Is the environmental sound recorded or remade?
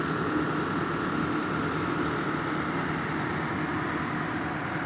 recorded